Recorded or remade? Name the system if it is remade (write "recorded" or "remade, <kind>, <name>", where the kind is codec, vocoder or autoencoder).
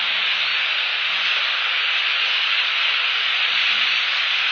recorded